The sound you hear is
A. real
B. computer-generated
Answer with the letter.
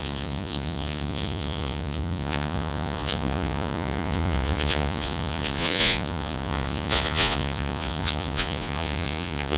B